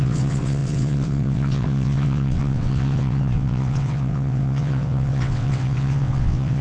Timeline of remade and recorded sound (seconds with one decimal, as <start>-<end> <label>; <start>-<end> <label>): 0.0-6.6 remade